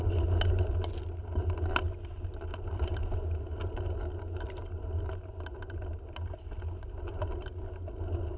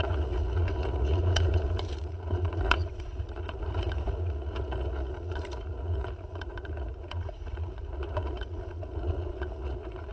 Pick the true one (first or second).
first